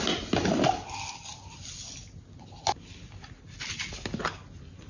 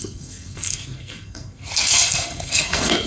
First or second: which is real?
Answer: first